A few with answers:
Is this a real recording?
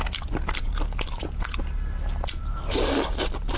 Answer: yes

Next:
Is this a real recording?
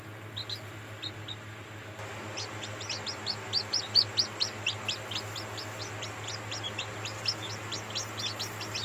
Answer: yes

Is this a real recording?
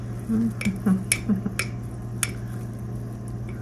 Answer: yes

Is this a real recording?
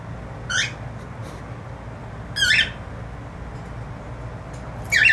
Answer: yes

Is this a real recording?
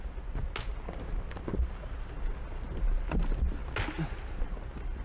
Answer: yes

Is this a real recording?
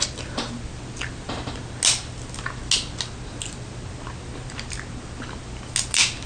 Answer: yes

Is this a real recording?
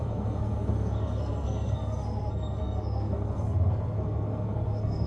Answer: no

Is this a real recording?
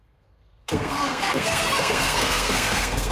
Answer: no